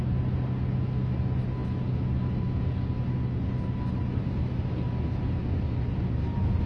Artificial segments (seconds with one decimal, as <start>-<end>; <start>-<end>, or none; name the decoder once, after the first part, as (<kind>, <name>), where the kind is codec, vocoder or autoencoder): none